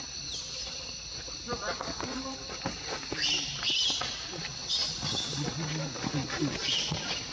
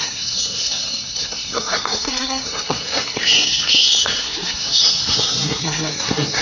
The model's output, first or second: second